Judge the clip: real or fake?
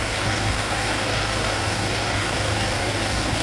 fake